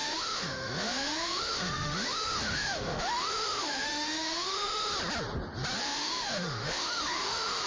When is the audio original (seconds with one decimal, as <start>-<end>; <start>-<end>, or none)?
4.9-5.8